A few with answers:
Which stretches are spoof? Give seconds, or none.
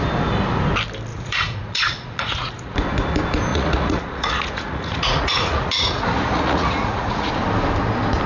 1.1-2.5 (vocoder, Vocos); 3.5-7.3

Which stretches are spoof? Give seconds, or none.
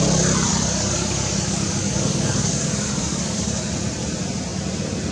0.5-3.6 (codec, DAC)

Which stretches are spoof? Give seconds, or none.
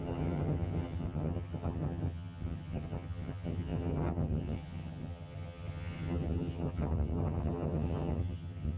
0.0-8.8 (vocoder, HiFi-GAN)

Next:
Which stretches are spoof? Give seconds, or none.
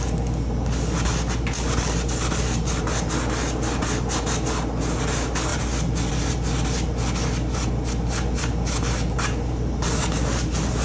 none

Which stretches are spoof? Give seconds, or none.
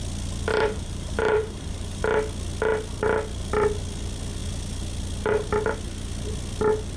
0.5-2.0 (vocoder, BigVGAN v2)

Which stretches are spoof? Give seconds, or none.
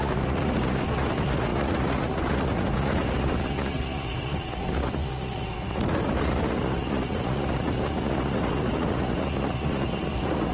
0.0-10.5 (vocoder, Vocos)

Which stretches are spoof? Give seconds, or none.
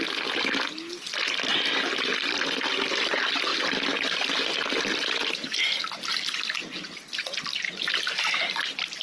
none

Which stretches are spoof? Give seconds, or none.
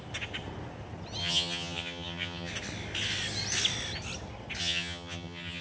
1.2-2.5 (vocoder, HiFi-GAN); 4.6-5.6